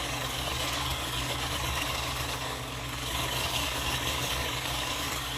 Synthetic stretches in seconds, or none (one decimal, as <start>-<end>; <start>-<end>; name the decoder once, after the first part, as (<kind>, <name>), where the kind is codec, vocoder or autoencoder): 0.0-5.4 (codec, DAC)